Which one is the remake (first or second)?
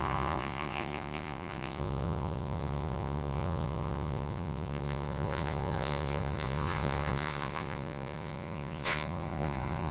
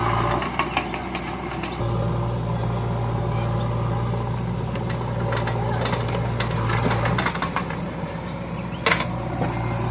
first